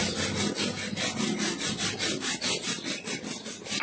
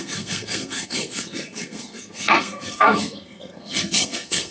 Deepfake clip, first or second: second